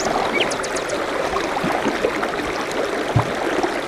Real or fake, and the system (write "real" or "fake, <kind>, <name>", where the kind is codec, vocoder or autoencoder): real